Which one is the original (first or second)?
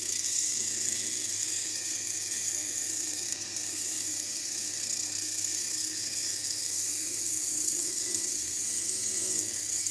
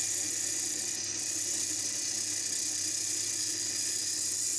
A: second